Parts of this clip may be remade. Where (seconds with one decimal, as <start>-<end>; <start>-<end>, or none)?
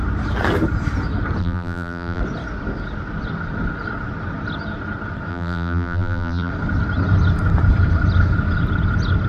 1.4-2.2; 5.3-6.5